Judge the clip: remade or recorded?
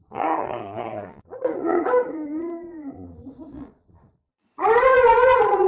remade